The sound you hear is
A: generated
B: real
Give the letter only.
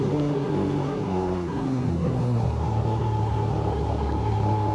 A